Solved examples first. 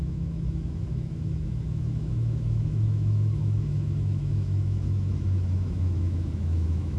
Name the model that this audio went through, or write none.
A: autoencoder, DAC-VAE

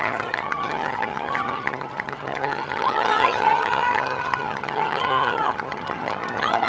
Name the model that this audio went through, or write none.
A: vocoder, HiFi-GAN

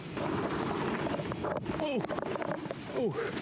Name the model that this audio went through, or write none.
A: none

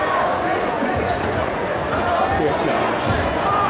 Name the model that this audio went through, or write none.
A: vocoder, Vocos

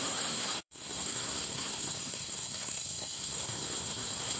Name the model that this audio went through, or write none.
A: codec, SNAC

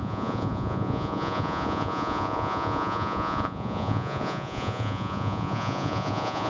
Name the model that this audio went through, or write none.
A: vocoder, Vocos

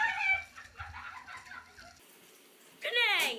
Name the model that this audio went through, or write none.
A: none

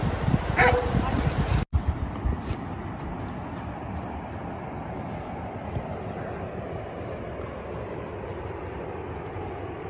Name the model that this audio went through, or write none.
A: none